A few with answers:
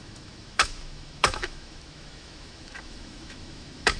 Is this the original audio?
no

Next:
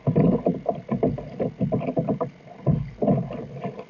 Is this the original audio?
yes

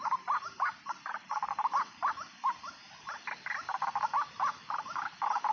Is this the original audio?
yes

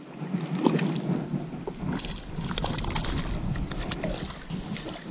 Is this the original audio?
yes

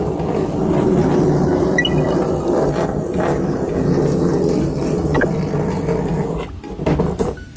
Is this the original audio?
yes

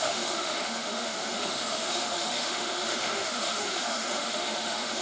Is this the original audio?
no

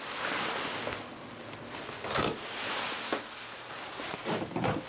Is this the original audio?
yes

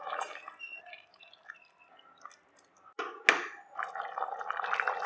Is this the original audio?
yes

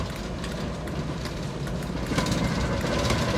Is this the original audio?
yes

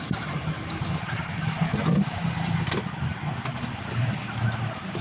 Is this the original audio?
yes